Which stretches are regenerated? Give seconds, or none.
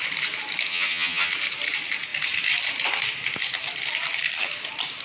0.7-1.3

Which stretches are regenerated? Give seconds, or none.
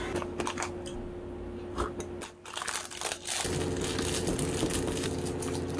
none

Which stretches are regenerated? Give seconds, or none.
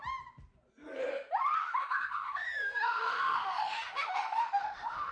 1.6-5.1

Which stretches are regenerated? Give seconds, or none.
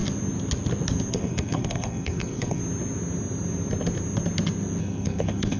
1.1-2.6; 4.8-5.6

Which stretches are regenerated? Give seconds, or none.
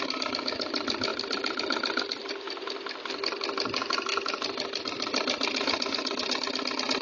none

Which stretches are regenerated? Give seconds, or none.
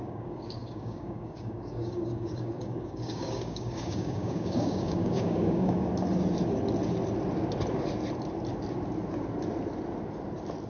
0.0-5.9